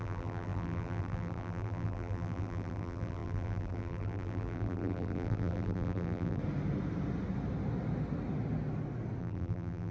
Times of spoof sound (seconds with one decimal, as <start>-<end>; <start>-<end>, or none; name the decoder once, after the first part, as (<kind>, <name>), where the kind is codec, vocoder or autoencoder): 0.0-6.4 (vocoder, BigVGAN v2); 9.2-9.9